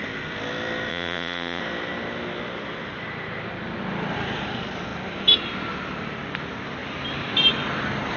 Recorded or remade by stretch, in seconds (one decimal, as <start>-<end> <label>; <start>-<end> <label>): 0.0-0.9 recorded; 0.9-1.6 remade; 1.6-8.2 recorded